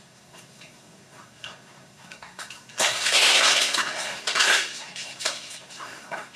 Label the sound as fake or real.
fake